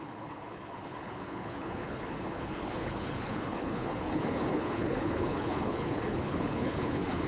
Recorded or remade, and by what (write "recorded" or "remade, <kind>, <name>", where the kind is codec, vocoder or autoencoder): remade, codec, HILCodec